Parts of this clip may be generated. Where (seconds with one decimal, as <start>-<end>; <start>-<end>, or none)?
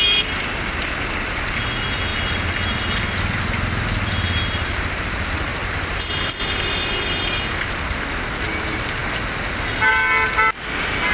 0.7-1.6; 2.1-3.4; 5.5-6.1